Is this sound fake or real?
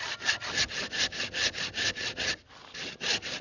real